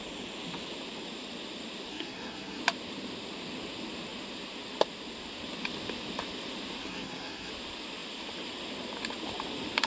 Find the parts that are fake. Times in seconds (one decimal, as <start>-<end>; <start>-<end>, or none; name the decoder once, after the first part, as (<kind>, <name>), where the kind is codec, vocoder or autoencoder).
1.9-2.6 (codec, SNAC); 6.8-7.5